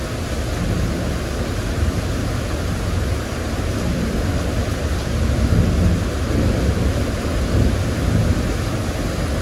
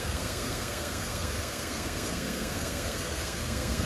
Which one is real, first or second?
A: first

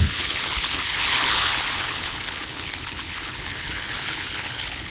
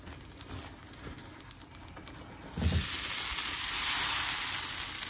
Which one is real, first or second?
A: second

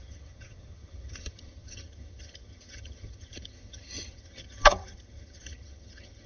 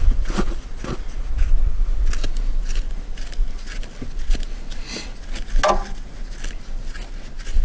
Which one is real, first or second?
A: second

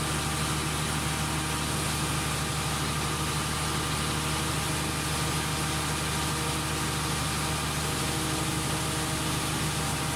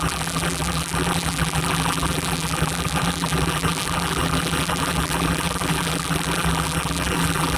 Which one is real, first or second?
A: first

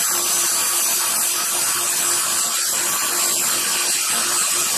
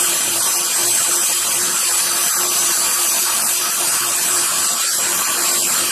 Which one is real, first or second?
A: first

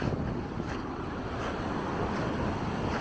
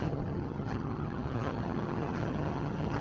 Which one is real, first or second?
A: first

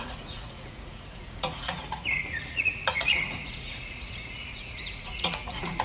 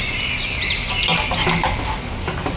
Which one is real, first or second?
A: second